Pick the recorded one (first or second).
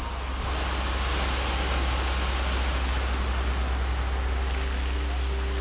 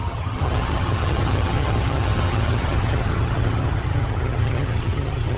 first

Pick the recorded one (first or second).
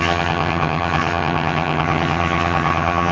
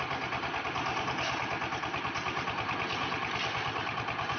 second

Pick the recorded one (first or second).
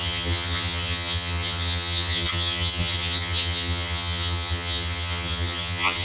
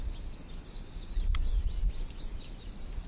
second